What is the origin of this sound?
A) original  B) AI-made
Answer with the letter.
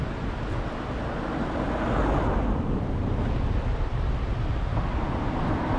A